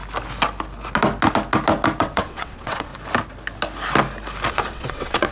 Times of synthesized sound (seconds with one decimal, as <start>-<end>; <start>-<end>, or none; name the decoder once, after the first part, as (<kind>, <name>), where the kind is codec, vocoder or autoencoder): 2.0-2.9 (vocoder, WaveNeXt); 4.5-5.3